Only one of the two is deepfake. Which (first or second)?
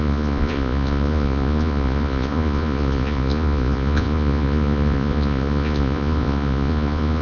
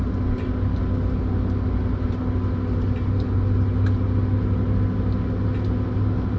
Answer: first